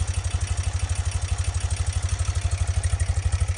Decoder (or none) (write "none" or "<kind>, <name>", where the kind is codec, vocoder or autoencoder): none